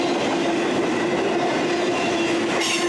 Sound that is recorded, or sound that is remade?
recorded